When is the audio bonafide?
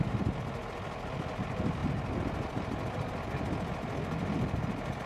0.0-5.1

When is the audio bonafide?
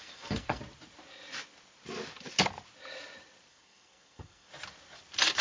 0.6-3.5; 4.5-5.4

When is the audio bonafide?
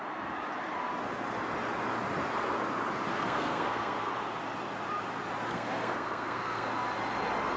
0.0-3.1; 4.1-5.5; 6.7-7.6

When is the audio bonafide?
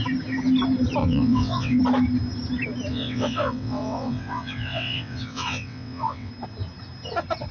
0.0-1.0; 1.8-2.9; 6.3-7.5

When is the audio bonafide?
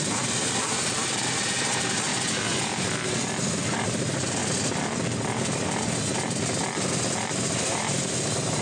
2.1-3.7; 4.4-7.6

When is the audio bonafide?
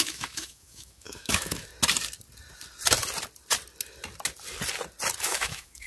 1.7-5.2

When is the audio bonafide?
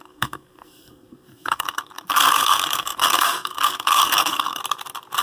4.6-5.2